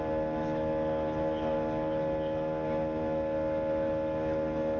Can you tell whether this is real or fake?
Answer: real